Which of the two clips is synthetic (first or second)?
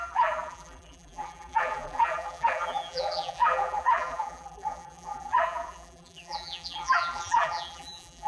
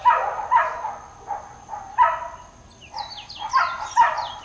first